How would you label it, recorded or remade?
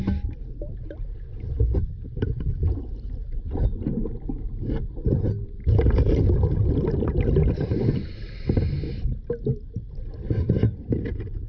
recorded